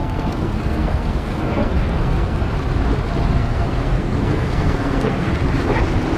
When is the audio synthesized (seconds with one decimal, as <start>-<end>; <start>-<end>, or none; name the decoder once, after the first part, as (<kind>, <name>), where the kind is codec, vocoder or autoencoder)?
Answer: 0.0-2.5 (codec, SNAC); 3.4-5.3